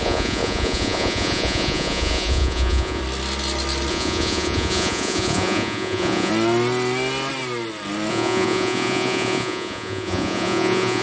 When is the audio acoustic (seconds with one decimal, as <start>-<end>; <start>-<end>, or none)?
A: 3.0-3.9; 6.3-8.1